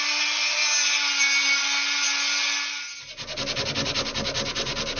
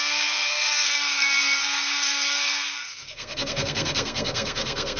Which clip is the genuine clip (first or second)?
first